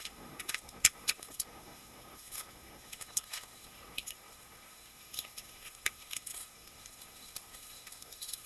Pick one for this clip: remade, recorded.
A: remade